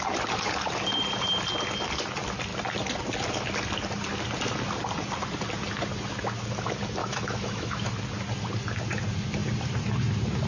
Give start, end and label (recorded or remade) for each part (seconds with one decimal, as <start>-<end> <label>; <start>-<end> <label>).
0.0-7.0 recorded; 7.0-7.8 remade; 7.8-10.5 recorded